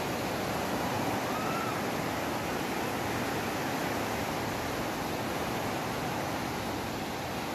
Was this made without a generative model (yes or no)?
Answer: yes